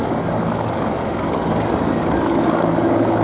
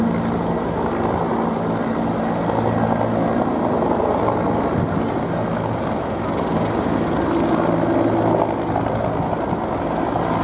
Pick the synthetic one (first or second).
first